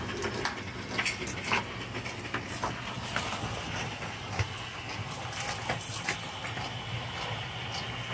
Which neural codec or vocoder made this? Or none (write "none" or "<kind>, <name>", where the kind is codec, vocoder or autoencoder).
none